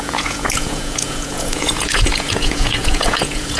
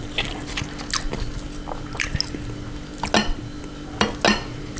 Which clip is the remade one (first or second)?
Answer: first